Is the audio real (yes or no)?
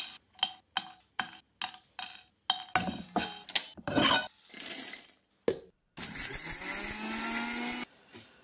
yes